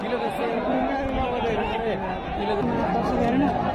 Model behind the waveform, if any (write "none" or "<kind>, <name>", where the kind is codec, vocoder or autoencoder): none